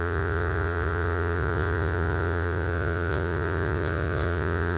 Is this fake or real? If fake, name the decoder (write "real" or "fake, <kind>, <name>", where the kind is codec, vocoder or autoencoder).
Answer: fake, vocoder, Vocos